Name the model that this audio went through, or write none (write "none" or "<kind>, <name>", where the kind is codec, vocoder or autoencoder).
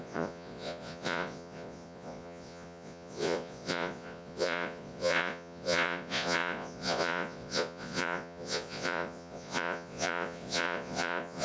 vocoder, Vocos